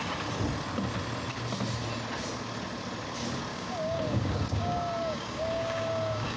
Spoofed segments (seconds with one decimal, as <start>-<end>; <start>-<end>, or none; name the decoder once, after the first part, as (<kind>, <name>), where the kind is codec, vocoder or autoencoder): 3.5-6.4 (codec, DAC)